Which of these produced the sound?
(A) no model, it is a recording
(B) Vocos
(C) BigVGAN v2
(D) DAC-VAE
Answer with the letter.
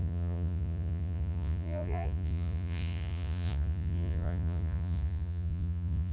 B